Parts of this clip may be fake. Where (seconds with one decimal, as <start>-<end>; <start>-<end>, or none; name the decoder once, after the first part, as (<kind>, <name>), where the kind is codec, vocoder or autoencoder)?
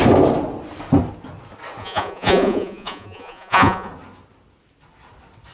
1.8-3.9 (vocoder, Vocos)